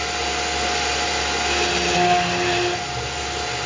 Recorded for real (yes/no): yes